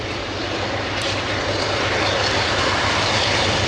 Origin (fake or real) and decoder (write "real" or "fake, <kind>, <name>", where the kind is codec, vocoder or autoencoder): real